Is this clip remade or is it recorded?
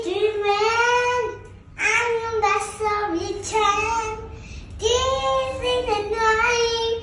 recorded